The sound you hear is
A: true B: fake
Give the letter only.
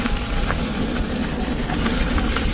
A